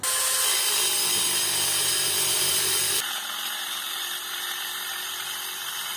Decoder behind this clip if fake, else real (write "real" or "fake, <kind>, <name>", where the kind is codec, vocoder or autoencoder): real